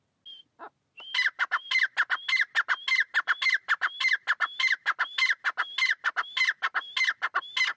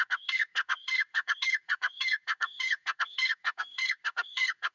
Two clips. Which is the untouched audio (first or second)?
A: first